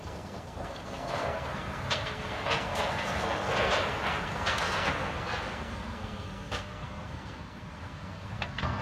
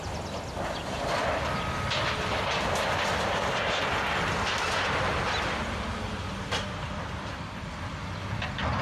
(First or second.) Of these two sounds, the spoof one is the first